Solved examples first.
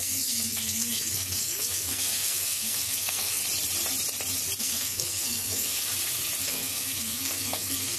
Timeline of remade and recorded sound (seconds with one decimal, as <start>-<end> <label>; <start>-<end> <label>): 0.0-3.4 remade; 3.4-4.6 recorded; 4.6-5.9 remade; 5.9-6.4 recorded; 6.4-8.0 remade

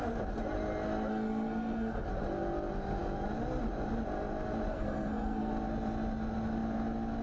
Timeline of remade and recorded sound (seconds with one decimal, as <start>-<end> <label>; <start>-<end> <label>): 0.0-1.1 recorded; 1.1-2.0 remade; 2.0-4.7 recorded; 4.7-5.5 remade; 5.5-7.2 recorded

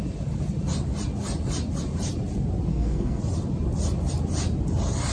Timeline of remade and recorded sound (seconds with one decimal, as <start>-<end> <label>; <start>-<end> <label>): 0.0-2.7 recorded; 2.7-3.2 remade; 3.2-5.1 recorded

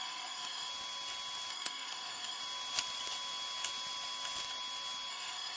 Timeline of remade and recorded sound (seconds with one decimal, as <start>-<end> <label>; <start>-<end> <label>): 0.0-0.7 remade; 0.7-1.5 recorded; 1.5-2.4 remade; 2.4-5.1 recorded; 5.1-5.6 remade

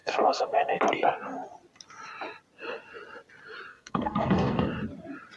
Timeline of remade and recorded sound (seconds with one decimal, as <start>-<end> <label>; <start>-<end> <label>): 0.0-0.8 remade; 0.8-3.7 recorded; 3.7-4.7 remade; 4.7-5.4 recorded

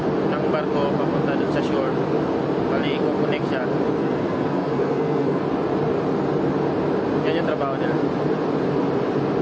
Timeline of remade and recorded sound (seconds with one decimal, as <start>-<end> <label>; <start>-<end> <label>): 0.0-4.0 recorded; 4.0-5.4 remade; 5.4-9.4 recorded

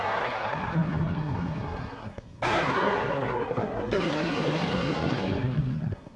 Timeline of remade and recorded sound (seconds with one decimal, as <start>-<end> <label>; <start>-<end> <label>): 0.0-6.2 remade